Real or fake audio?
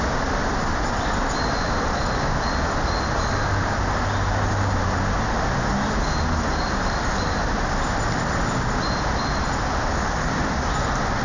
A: real